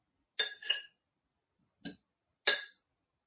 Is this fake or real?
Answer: real